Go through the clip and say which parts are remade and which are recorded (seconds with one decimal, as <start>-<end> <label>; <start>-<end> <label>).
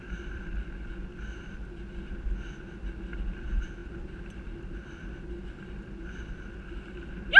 0.0-7.4 recorded